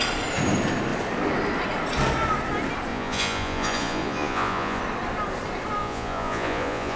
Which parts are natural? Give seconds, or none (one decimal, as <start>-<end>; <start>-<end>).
0.0-2.9; 4.8-5.8